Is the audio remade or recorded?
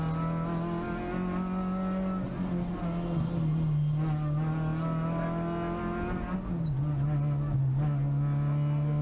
recorded